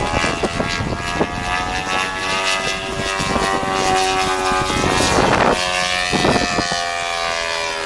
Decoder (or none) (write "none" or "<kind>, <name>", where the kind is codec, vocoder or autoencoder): none